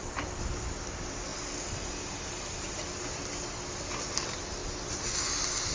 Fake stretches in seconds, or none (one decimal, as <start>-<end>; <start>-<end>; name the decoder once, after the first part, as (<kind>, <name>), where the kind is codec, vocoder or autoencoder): none